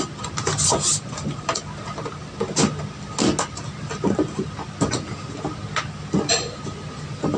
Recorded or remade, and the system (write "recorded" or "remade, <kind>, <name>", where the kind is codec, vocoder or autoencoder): recorded